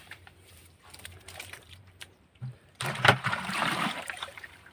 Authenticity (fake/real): fake